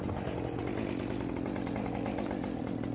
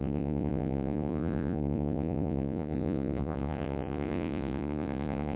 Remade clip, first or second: second